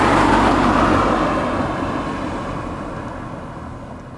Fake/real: real